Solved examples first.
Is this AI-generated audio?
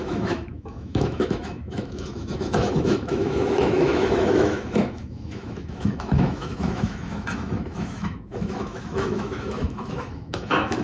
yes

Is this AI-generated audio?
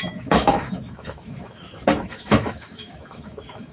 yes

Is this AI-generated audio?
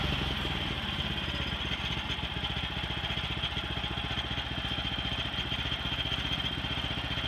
no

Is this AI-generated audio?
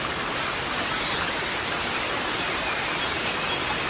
no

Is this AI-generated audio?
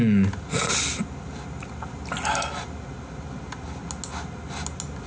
no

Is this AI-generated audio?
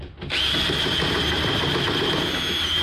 no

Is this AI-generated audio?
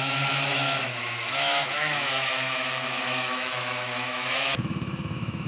yes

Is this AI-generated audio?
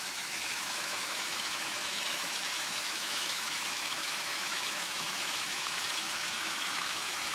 yes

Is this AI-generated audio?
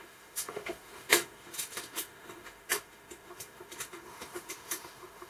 yes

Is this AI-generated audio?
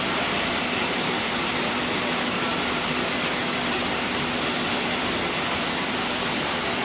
no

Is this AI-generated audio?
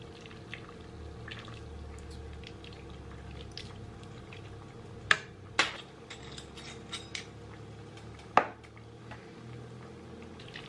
no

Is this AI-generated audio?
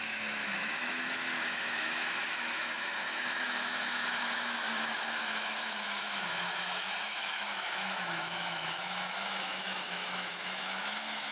yes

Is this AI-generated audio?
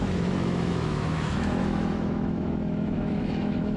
yes